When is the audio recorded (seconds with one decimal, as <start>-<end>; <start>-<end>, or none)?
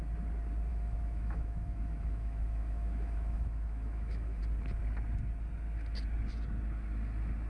0.0-0.7; 4.4-7.5